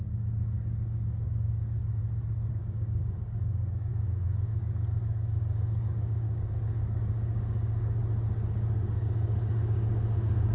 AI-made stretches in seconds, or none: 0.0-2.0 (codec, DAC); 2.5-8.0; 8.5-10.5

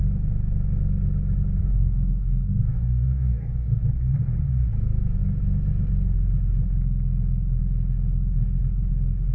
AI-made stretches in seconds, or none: 1.6-3.8 (codec, DAC)